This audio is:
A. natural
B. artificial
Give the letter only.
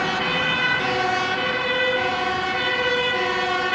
A